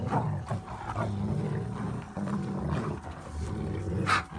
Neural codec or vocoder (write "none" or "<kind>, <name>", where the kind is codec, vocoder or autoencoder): none